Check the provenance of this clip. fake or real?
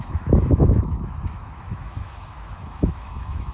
fake